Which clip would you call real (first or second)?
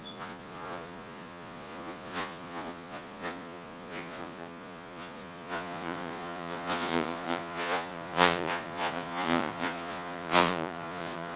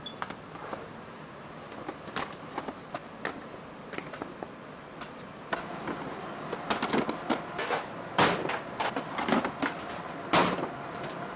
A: second